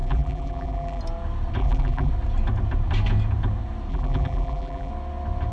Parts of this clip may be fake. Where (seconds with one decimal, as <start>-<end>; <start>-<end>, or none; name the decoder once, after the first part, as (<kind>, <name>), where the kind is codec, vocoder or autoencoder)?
0.0-1.0 (vocoder, BigVGAN v2); 1.6-2.1; 3.9-4.9